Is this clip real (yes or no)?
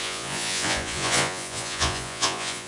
no